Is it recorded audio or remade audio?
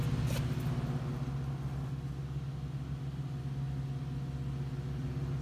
recorded